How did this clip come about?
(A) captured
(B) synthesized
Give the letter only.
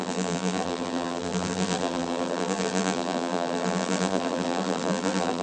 B